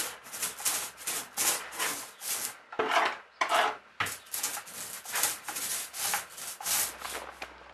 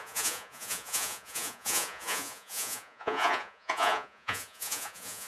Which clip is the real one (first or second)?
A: first